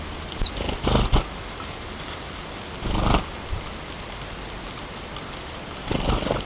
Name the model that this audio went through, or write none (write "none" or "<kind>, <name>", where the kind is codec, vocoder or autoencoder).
none